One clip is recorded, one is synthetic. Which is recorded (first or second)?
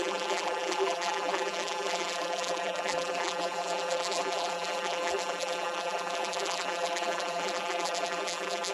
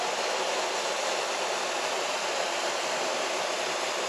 second